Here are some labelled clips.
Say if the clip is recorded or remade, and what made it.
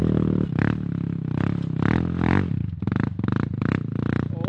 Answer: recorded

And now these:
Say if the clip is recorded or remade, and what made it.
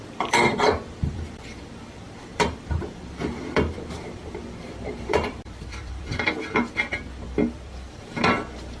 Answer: remade, vocoder, BigVGAN v2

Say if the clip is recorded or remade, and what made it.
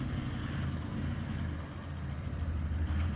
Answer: recorded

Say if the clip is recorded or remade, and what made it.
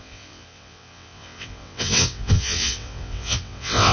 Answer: remade, vocoder, WaveNeXt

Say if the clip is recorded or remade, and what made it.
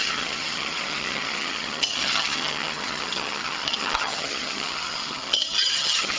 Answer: remade, vocoder, HiFi-GAN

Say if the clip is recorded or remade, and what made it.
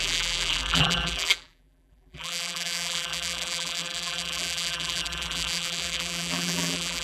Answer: remade, vocoder, BigVGAN v2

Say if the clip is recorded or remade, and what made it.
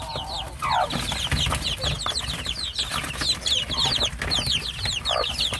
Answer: recorded